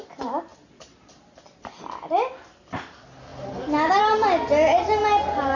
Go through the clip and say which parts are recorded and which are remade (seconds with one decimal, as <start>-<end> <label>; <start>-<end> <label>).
0.0-5.6 recorded